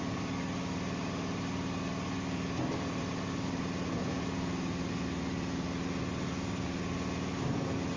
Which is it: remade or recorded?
recorded